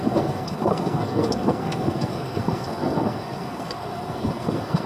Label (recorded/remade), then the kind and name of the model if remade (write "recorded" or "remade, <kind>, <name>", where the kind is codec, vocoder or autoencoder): remade, codec, SNAC